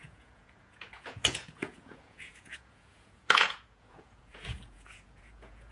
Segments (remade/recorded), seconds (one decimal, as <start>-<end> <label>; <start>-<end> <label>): 0.0-5.7 remade